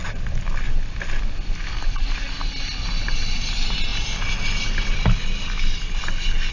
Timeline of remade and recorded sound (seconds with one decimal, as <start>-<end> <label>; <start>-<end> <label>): 0.0-0.5 remade; 0.5-6.5 recorded